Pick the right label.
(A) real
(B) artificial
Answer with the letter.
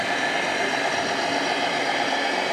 A